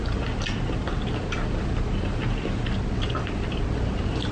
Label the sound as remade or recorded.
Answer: recorded